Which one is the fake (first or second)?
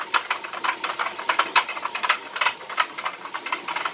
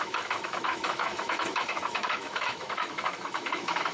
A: second